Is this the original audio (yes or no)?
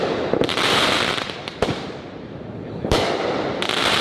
no